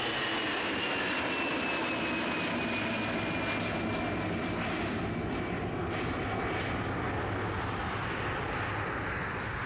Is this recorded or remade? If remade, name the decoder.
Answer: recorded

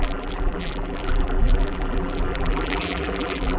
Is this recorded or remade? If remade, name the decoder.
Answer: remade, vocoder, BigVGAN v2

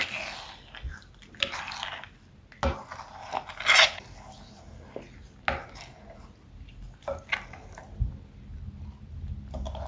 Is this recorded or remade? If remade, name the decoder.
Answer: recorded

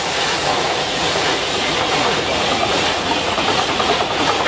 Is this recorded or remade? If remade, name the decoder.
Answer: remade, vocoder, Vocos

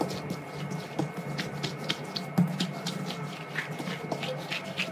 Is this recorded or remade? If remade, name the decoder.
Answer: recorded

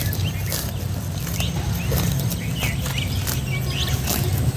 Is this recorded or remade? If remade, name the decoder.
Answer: recorded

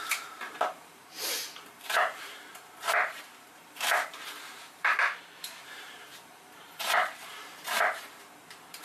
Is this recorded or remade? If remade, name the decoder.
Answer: remade, vocoder, BigVGAN v2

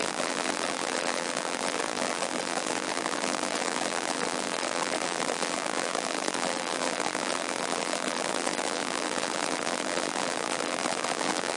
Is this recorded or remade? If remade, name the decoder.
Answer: remade, vocoder, BigVGAN v2